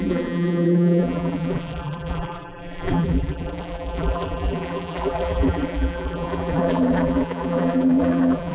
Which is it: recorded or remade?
remade